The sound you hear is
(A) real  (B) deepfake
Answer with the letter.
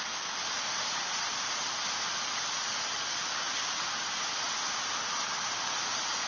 A